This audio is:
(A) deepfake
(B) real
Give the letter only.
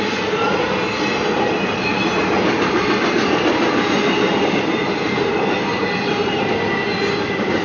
B